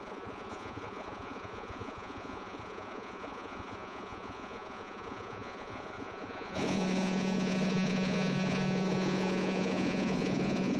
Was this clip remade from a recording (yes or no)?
yes